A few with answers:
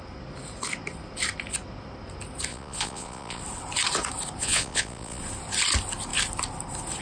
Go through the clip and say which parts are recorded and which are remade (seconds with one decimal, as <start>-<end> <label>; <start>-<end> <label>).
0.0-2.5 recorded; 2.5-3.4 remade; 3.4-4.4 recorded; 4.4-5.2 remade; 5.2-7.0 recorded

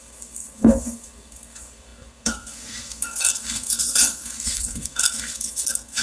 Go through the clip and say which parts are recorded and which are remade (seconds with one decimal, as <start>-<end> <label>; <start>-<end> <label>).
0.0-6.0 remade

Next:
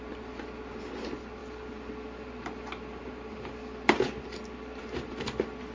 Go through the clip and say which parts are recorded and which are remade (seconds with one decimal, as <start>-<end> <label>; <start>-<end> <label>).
0.0-1.4 recorded; 1.4-4.8 remade; 4.8-5.7 recorded